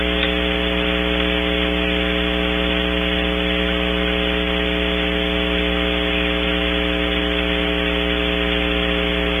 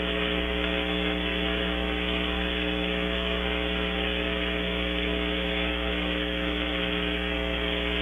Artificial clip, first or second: second